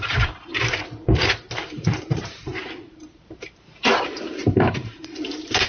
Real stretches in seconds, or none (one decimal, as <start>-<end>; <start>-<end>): 0.5-1.7